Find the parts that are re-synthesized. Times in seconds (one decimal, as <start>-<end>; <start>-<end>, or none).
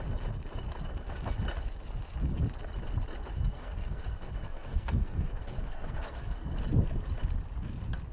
3.3-6.6